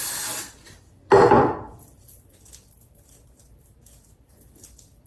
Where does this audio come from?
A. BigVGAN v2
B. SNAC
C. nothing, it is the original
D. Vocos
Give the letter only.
C